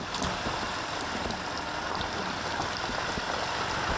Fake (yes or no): no